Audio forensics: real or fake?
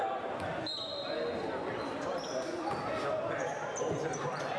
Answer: real